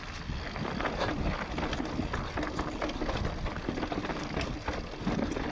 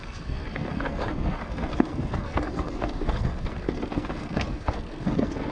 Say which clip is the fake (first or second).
second